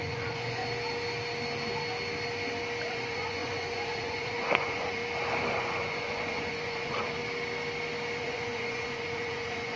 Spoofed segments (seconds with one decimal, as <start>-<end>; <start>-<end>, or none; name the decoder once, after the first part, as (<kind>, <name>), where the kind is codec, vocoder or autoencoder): 0.0-0.6 (vocoder, Vocos); 2.9-5.0; 5.5-7.2; 8.2-9.8